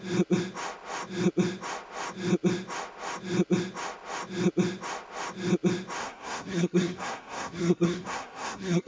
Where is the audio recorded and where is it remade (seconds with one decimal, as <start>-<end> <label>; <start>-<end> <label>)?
0.0-6.0 recorded; 6.0-8.9 remade